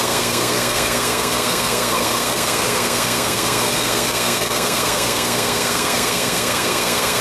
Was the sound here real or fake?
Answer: fake